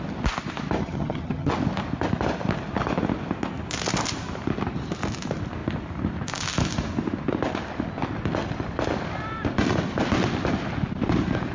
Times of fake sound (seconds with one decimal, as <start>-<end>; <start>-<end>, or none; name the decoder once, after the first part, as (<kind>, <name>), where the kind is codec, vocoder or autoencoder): 0.8-1.5 (vocoder, HiFi-GAN)